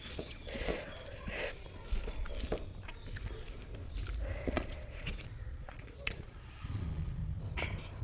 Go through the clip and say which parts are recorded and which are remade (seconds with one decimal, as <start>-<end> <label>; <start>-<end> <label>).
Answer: 0.0-0.7 remade; 0.7-4.4 recorded; 4.4-7.2 remade; 7.2-8.0 recorded